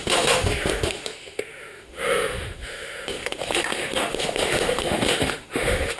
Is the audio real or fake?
fake